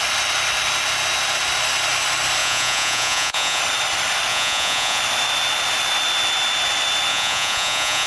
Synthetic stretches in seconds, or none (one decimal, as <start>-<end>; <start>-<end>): 2.4-3.6; 4.3-5.0; 7.1-8.1